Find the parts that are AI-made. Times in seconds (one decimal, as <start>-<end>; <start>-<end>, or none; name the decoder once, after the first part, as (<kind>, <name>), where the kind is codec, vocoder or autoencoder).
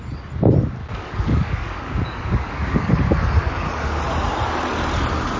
0.8-4.0 (codec, DAC)